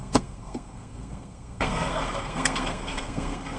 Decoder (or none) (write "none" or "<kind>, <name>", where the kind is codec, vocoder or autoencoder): codec, SNAC